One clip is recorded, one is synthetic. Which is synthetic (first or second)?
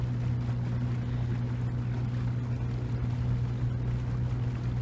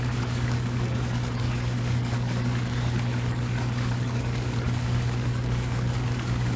second